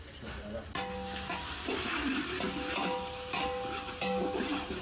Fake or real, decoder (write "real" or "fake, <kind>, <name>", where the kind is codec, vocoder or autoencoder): real